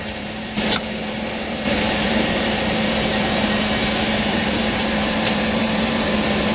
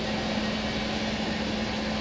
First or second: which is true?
second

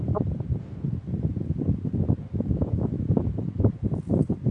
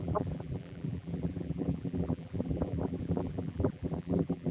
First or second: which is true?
first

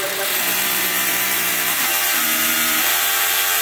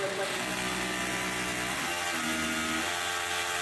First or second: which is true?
second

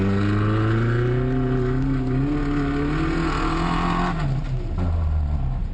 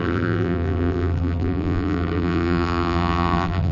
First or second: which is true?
first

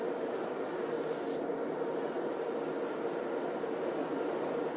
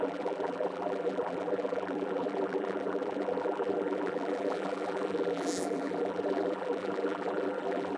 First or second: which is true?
first